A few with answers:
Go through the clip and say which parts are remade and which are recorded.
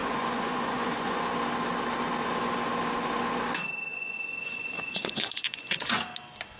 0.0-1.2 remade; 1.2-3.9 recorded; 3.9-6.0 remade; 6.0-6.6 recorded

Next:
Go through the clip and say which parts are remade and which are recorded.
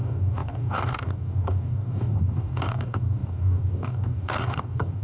0.0-5.0 remade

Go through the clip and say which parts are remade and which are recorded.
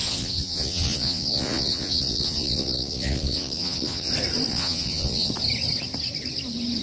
0.0-4.1 remade; 4.1-4.5 recorded; 4.5-5.3 remade; 5.3-6.8 recorded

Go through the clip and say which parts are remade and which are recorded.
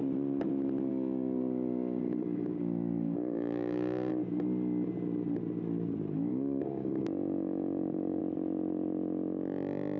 0.0-0.9 recorded; 0.9-4.1 remade; 4.1-6.3 recorded; 6.3-8.2 remade; 8.2-10.0 recorded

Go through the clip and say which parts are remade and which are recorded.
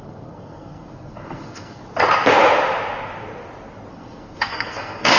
0.0-1.8 remade; 1.8-3.9 recorded; 3.9-5.2 remade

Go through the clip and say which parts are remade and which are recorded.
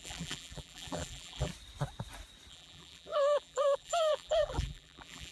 0.0-1.5 remade; 1.5-2.5 recorded; 2.5-5.3 remade